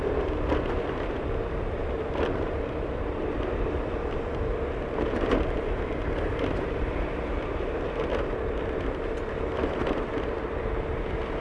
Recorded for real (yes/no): yes